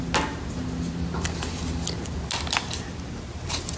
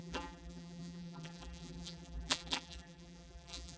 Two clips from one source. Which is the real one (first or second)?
first